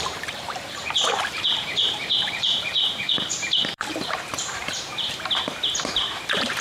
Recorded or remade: remade